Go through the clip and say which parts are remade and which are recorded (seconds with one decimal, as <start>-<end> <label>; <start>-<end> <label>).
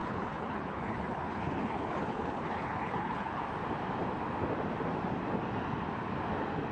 0.0-3.4 remade; 3.4-6.7 recorded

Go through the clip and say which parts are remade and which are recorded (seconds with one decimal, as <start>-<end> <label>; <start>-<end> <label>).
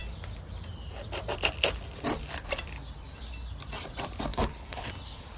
0.0-4.3 recorded; 4.3-4.9 remade; 4.9-5.4 recorded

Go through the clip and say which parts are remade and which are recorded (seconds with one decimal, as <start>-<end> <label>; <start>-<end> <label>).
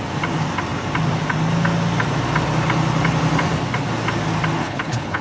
0.0-4.6 recorded; 4.6-5.2 remade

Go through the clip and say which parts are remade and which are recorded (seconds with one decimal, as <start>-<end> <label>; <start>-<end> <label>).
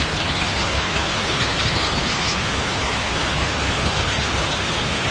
0.0-5.1 remade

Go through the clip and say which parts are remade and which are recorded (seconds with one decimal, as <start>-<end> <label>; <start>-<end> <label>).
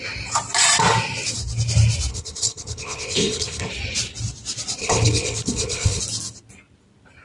0.0-2.1 recorded; 2.1-3.7 remade; 3.7-4.8 recorded; 4.8-6.0 remade; 6.0-7.2 recorded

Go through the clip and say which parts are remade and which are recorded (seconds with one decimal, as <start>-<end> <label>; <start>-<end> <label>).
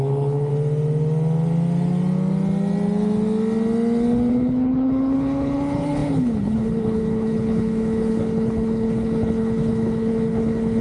0.0-0.5 remade; 0.5-4.3 recorded; 4.3-10.8 remade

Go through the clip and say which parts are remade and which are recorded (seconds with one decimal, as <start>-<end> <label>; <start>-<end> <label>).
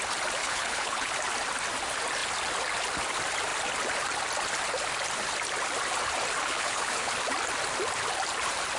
0.0-0.4 recorded; 0.4-1.1 remade; 1.1-6.4 recorded; 6.4-7.1 remade; 7.1-8.8 recorded